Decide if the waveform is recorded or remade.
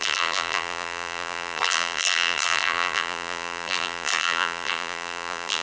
remade